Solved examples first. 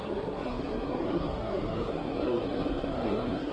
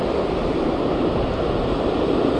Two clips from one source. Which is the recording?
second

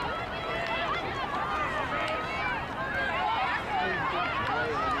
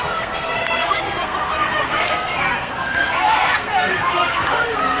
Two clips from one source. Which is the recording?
first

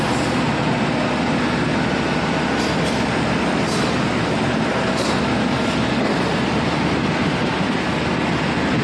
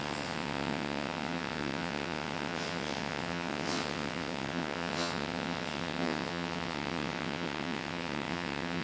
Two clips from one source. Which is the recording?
first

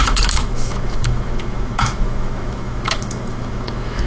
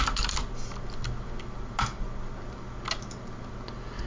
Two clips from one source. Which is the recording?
second